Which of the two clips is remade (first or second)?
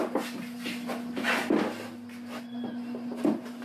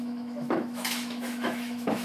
second